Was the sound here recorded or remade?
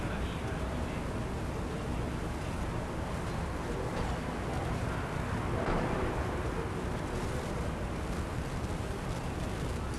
recorded